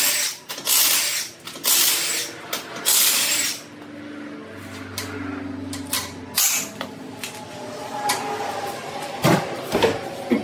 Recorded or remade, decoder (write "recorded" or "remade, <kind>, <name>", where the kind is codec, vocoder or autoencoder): recorded